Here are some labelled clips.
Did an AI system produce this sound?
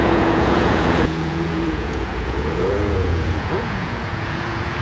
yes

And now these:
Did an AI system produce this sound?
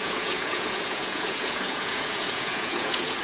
yes